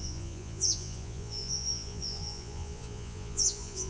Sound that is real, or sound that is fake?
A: fake